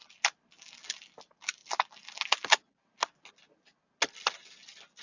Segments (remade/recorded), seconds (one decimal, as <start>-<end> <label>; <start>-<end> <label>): 0.0-5.0 recorded